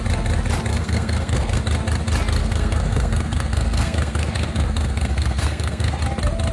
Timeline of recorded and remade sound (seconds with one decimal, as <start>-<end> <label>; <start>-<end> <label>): 0.0-0.7 recorded; 0.7-1.6 remade; 1.6-2.4 recorded; 2.4-6.0 remade; 6.0-6.5 recorded